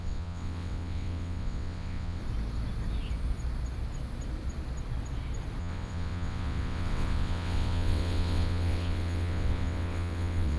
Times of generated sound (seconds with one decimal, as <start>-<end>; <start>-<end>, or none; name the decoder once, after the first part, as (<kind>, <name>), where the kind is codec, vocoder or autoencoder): 0.0-2.2 (vocoder, WaveNeXt); 5.6-10.6